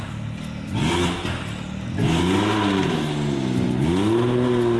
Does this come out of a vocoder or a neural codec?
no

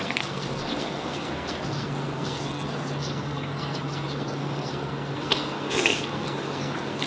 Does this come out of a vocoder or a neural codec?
yes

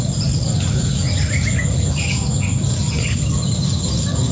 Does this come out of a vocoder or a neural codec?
no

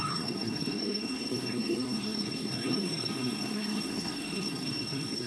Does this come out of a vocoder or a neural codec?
yes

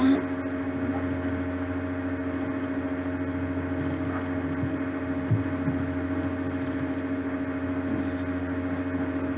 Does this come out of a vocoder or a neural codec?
no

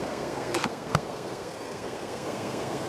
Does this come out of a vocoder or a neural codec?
yes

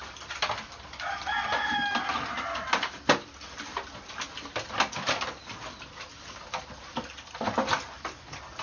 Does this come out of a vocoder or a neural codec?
no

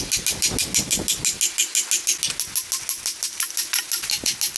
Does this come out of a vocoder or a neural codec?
no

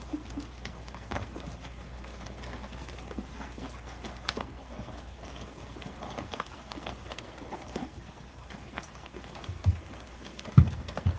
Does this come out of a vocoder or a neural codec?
yes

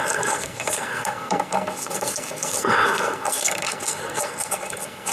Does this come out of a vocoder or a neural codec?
yes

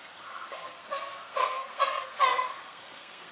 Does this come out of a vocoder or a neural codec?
yes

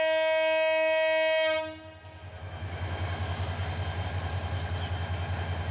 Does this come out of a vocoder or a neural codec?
no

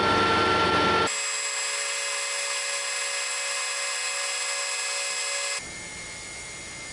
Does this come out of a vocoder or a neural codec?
no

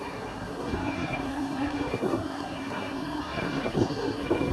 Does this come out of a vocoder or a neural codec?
yes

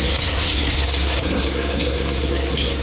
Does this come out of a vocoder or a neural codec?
yes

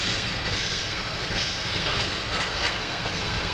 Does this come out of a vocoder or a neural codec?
yes